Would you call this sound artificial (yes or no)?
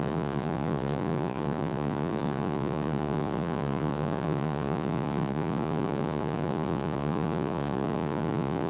yes